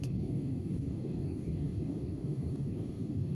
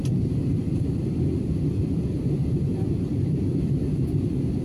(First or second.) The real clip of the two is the second